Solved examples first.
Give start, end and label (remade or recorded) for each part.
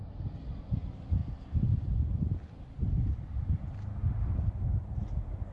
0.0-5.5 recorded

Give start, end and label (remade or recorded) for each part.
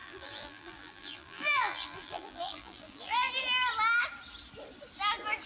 0.0-3.3 remade; 3.3-5.5 recorded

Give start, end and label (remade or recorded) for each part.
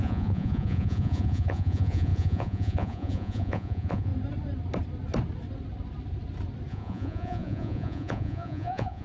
0.0-4.1 remade; 4.1-6.7 recorded; 6.7-9.0 remade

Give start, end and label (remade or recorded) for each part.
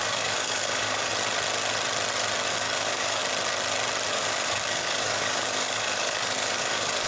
0.0-1.1 remade; 1.1-2.5 recorded; 2.5-3.2 remade; 3.2-4.1 recorded; 4.1-7.1 remade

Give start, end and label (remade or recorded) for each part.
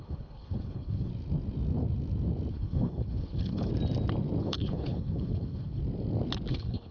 0.0-1.1 remade; 1.1-2.5 recorded; 2.5-3.7 remade; 3.7-4.4 recorded; 4.4-5.8 remade; 5.8-6.5 recorded; 6.5-6.9 remade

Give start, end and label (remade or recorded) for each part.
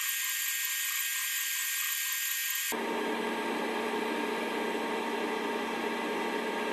0.0-1.1 recorded; 1.1-1.7 remade; 1.7-6.7 recorded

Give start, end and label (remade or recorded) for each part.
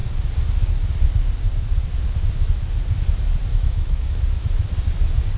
0.0-3.5 recorded; 3.5-4.2 remade; 4.2-5.4 recorded